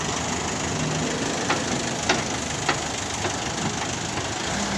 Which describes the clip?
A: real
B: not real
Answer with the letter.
A